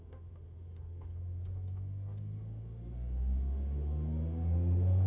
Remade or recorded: remade